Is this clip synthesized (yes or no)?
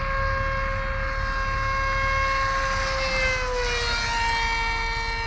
no